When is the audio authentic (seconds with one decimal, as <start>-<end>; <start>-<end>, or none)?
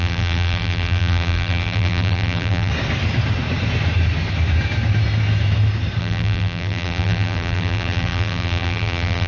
2.7-6.0